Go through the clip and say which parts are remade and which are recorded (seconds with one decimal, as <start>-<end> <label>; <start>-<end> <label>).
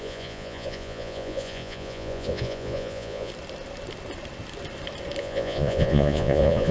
0.0-3.3 remade; 3.3-5.2 recorded; 5.2-6.7 remade